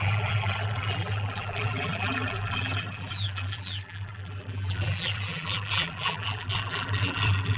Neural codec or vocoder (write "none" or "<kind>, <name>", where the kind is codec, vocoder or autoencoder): vocoder, BigVGAN v2